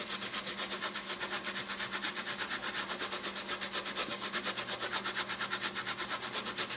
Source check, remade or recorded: recorded